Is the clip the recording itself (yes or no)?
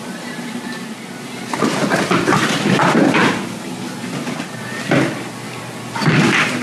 yes